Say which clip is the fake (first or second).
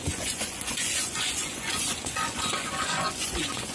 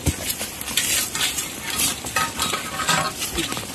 first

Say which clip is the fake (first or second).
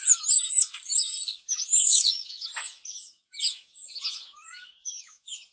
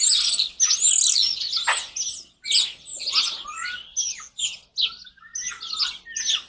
first